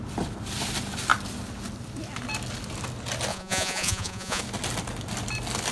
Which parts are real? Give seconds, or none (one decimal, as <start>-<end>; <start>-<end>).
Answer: 0.0-3.3; 4.4-5.7